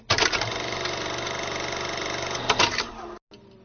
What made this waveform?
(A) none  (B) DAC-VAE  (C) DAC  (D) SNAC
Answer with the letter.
A